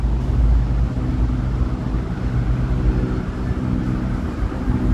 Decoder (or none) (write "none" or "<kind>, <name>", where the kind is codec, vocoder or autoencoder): none